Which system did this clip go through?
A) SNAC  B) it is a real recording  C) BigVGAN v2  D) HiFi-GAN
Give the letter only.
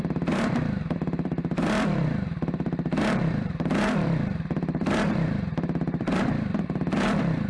C